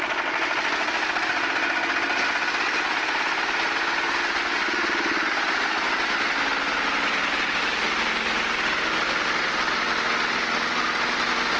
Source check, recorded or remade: recorded